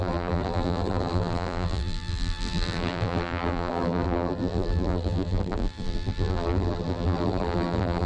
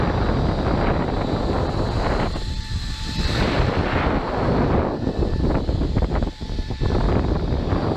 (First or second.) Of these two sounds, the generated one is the first